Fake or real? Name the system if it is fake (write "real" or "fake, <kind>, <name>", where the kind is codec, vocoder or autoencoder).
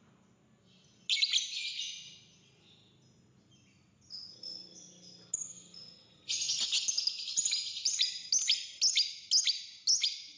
real